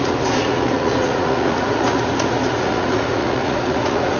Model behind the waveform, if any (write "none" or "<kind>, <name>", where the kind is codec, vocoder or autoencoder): vocoder, Vocos